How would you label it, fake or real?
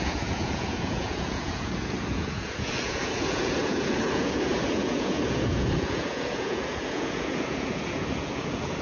fake